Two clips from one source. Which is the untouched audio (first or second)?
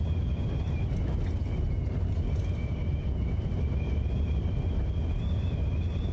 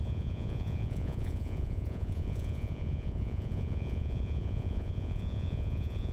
first